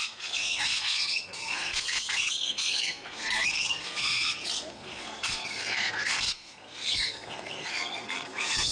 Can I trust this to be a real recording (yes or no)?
no